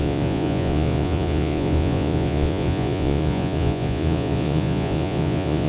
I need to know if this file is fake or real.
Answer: fake